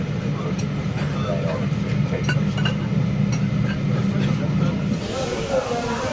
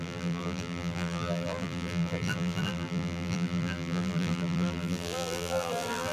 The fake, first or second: second